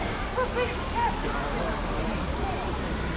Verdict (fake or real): real